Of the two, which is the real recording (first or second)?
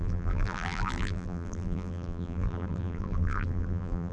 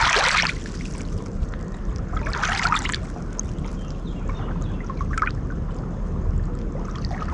second